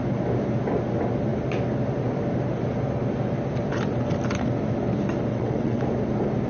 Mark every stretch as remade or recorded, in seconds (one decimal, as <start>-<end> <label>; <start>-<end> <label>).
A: 0.0-5.3 recorded; 5.3-5.8 remade; 5.8-6.5 recorded